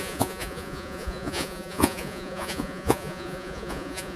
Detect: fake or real fake